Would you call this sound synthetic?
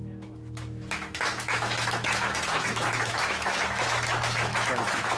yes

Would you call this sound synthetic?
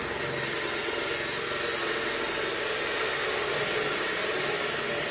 no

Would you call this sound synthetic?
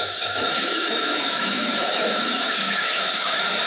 yes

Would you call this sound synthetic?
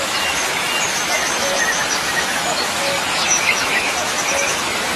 yes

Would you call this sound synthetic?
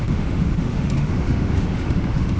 yes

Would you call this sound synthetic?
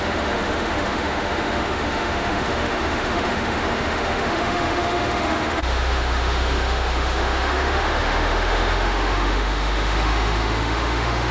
yes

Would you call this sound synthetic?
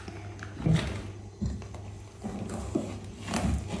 no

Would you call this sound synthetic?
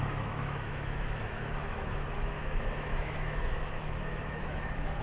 yes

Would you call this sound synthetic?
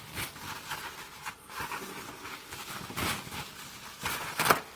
no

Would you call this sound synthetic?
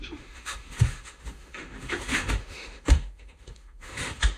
yes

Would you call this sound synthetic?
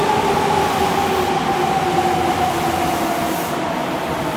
no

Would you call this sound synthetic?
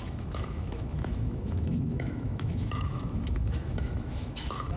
yes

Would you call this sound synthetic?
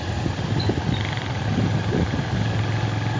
no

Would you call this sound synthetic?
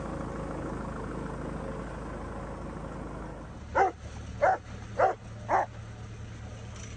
no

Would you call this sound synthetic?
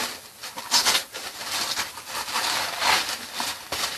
no